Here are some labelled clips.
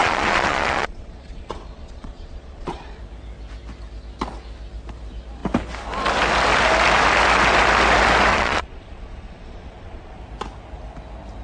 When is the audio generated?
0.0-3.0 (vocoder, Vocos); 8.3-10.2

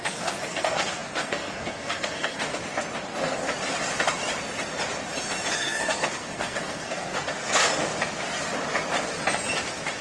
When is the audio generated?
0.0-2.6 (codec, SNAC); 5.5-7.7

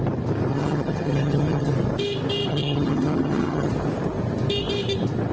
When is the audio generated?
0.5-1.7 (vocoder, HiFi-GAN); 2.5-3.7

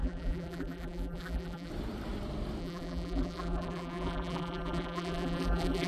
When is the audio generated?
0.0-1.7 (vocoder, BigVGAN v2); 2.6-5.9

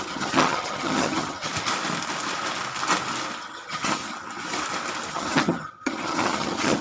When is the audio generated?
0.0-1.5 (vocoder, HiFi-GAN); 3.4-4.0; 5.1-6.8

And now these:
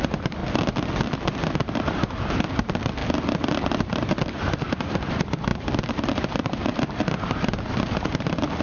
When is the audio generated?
0.0-0.4 (vocoder, BigVGAN v2); 1.5-3.0; 3.8-8.6

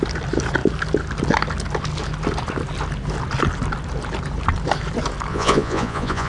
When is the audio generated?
5.3-6.3 (vocoder, Vocos)